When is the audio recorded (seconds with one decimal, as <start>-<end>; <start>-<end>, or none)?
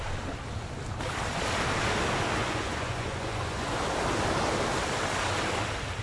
0.0-2.4; 3.7-6.0